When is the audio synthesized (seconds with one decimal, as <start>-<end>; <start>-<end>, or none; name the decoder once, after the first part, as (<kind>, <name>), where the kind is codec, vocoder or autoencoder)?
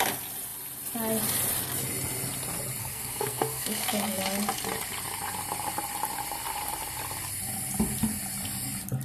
2.8-4.2 (codec, SNAC)